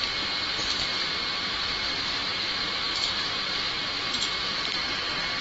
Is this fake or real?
fake